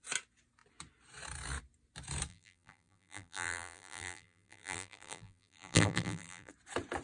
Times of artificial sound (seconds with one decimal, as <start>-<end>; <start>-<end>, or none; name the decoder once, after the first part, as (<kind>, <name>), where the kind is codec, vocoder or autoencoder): 2.3-6.5 (vocoder, BigVGAN v2)